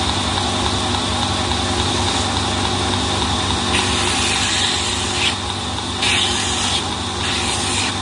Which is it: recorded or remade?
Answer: recorded